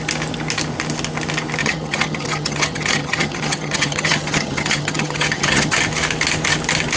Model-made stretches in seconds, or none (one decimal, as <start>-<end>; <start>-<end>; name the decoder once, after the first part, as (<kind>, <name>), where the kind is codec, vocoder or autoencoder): 1.6-5.8 (vocoder, HiFi-GAN)